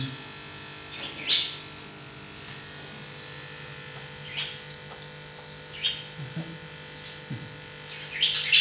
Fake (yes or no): no